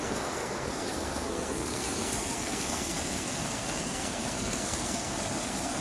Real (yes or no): no